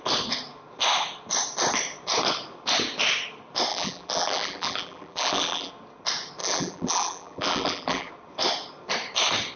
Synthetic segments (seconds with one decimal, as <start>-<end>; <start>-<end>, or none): 3.7-5.7; 6.4-8.1